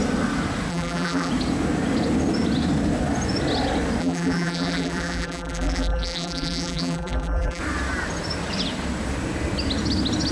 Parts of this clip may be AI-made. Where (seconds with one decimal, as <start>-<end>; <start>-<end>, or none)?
0.7-1.3; 4.0-7.6